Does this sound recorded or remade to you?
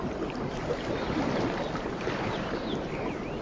remade